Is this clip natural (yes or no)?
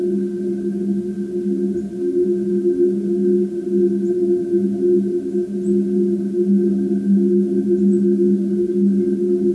yes